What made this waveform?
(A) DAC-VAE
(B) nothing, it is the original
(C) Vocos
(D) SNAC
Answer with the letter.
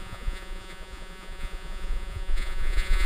C